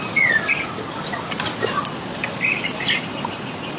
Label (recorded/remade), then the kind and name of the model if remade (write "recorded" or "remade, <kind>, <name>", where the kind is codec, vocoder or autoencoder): recorded